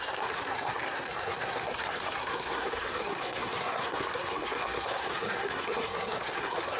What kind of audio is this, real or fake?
fake